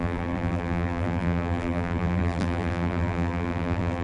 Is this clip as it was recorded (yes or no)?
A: no